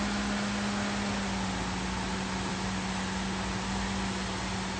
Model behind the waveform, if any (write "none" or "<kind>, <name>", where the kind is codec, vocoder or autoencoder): none